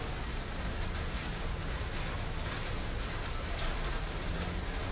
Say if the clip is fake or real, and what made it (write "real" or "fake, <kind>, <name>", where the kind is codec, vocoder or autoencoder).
real